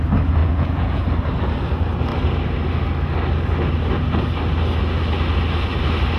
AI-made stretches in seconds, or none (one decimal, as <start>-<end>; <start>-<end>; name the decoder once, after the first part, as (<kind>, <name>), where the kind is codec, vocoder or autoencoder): 0.4-1.0 (vocoder, Vocos)